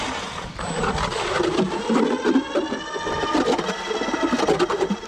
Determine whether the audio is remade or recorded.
recorded